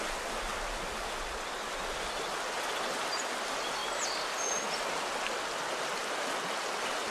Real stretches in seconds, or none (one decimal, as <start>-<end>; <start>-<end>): 0.0-7.1